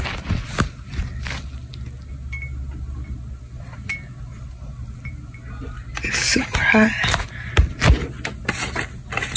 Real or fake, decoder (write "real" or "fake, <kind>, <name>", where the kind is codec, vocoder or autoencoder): real